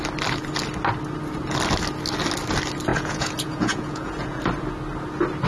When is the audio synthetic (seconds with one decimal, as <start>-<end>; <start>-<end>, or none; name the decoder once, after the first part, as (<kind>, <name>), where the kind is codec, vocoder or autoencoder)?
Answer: 2.9-4.4 (vocoder, Vocos)